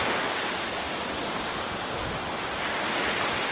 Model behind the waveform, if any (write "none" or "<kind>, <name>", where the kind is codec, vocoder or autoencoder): none